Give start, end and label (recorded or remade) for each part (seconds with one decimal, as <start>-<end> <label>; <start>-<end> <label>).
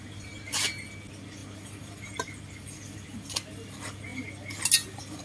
0.0-5.2 recorded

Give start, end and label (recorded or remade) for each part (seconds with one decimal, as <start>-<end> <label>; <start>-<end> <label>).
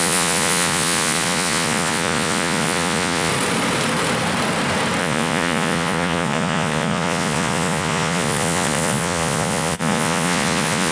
0.0-3.3 remade; 3.3-5.0 recorded; 5.0-10.9 remade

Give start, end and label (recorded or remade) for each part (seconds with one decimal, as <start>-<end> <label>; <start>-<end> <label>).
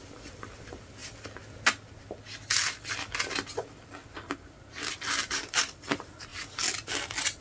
0.0-1.0 remade; 1.0-5.4 recorded; 5.4-6.3 remade; 6.3-7.4 recorded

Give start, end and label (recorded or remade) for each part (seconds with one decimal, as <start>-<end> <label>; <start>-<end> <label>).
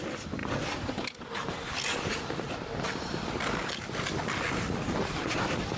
0.0-5.8 recorded